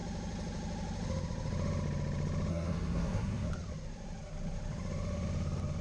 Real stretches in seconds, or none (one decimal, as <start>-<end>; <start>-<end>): 0.0-2.5; 3.5-5.8